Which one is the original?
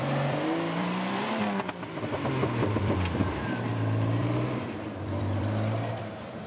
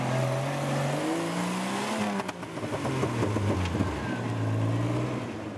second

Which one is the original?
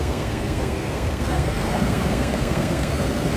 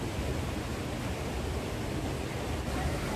second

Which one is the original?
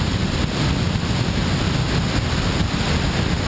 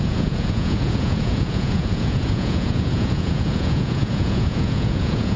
first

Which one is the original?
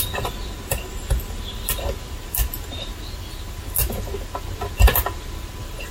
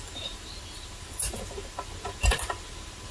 first